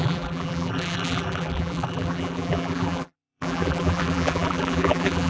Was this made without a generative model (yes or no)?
no